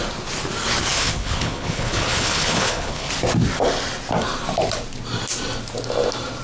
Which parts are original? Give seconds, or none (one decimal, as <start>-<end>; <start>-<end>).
0.0-0.9; 3.1-6.4